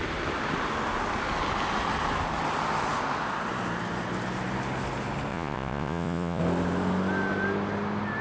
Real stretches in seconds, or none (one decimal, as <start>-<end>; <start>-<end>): 0.0-5.3; 6.4-8.2